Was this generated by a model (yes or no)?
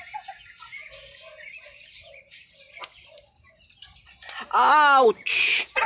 no